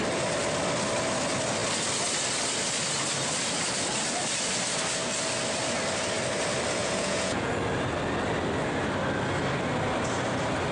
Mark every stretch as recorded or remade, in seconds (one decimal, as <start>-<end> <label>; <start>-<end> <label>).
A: 0.0-6.8 recorded; 6.8-7.5 remade; 7.5-10.7 recorded